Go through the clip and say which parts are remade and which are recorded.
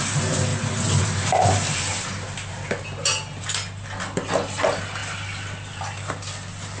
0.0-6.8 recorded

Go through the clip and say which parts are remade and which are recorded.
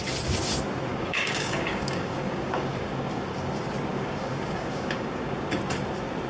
0.0-0.9 recorded; 0.9-3.5 remade; 3.5-3.9 recorded; 3.9-5.6 remade; 5.6-6.3 recorded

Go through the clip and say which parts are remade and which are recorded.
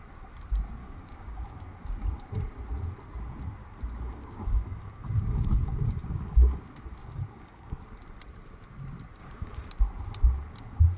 0.0-0.8 recorded; 0.8-1.4 remade; 1.4-3.6 recorded; 3.6-6.6 remade; 6.6-7.0 recorded; 7.0-7.7 remade; 7.7-9.2 recorded; 9.2-9.7 remade; 9.7-11.0 recorded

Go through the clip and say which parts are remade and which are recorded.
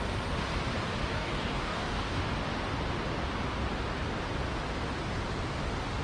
0.0-1.1 recorded; 1.1-2.2 remade; 2.2-6.0 recorded